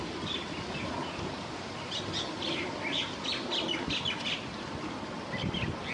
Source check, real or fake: real